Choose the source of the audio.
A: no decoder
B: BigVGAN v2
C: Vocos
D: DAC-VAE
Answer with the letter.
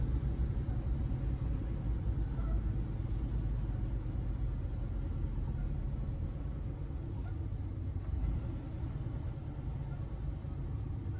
A